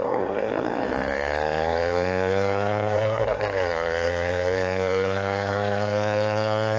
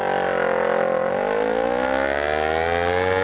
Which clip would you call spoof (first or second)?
first